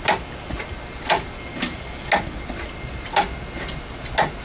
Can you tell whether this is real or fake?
real